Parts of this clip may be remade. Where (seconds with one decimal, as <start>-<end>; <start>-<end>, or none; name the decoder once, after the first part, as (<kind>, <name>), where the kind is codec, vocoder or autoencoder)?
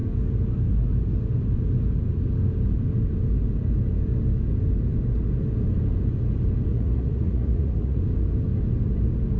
6.7-8.0 (vocoder, Vocos)